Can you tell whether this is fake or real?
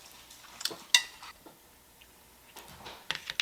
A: real